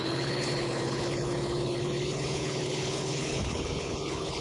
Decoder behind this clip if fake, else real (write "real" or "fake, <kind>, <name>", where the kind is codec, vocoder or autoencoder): fake, codec, HILCodec